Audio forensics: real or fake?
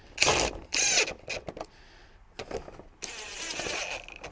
real